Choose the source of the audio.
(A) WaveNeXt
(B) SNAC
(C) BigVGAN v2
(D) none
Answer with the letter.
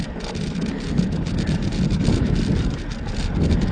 D